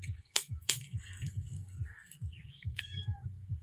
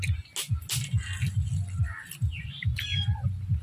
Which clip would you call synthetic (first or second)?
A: first